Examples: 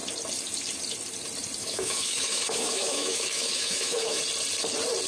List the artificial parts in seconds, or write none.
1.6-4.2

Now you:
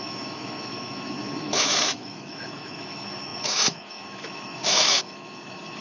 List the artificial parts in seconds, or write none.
0.0-5.8

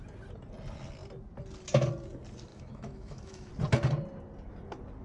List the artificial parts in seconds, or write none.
2.5-3.5

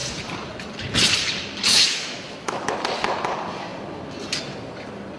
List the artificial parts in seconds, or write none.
1.7-2.7

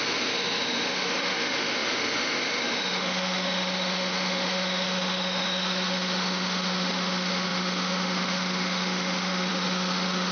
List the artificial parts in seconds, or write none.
0.0-10.3

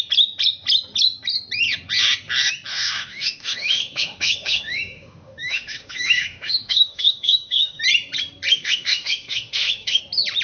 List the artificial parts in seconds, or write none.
2.7-7.8; 8.5-10.0

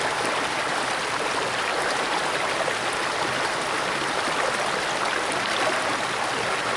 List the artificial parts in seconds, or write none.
none

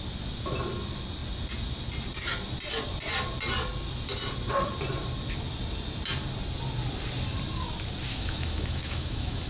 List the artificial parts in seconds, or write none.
8.1-9.5